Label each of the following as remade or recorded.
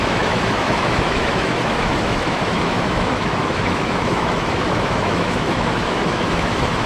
remade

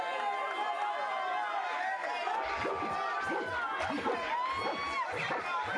recorded